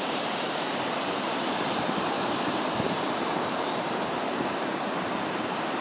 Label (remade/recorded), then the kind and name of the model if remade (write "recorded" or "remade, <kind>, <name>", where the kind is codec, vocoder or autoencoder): remade, vocoder, BigVGAN v2